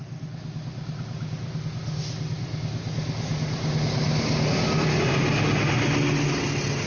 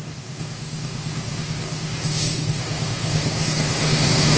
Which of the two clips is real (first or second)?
first